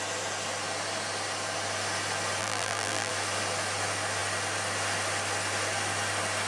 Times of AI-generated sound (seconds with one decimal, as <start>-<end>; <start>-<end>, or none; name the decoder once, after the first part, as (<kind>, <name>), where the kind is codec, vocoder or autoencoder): 2.4-3.1 (vocoder, BigVGAN v2)